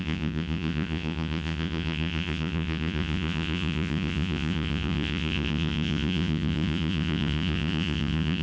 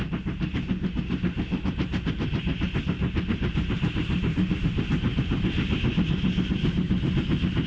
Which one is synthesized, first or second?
first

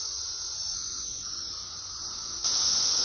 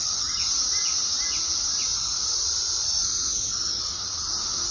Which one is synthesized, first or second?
first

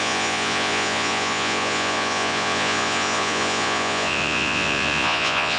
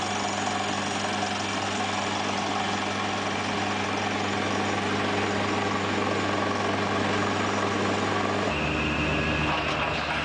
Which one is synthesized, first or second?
first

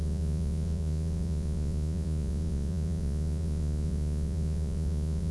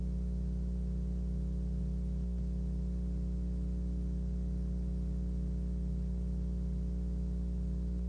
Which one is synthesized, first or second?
first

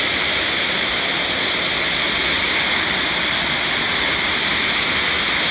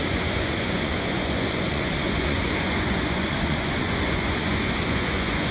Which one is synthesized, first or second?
second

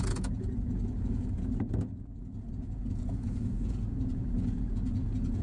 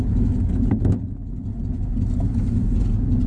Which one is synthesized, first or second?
first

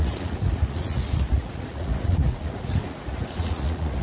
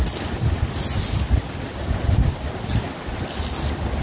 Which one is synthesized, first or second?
first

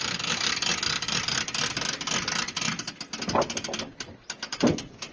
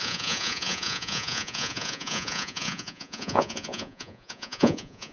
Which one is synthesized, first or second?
second